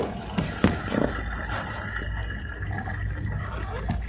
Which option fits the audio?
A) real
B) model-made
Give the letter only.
A